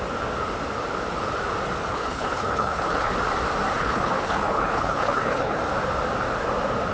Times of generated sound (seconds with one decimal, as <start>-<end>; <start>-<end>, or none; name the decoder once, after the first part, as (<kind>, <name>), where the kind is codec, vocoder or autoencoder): 1.9-3.1 (codec, HILCodec); 3.8-5.6